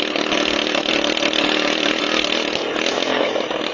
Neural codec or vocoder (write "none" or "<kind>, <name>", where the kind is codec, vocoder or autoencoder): none